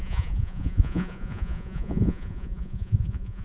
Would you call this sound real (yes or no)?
no